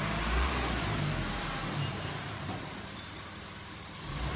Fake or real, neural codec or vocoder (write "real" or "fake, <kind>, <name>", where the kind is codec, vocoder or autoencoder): fake, vocoder, BigVGAN v2